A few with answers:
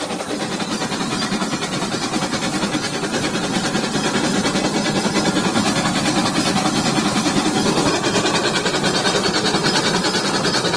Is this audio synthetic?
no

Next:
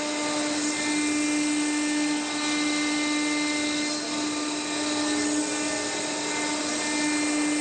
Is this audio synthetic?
no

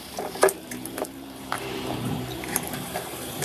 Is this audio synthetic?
yes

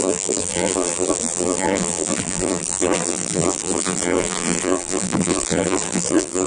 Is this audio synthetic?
yes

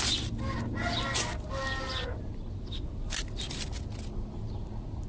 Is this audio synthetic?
no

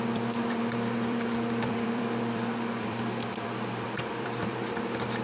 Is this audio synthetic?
yes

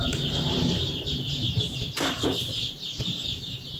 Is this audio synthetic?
yes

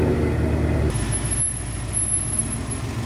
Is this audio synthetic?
no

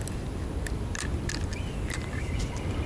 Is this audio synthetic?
no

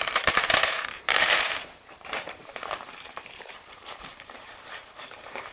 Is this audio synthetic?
yes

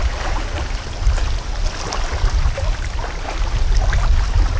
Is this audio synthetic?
no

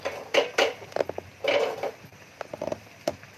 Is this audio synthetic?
no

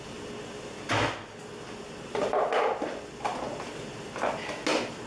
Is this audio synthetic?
no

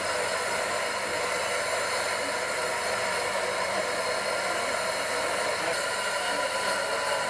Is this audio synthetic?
no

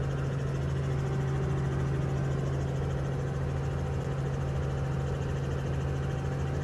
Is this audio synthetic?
no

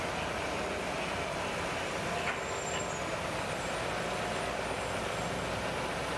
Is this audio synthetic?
no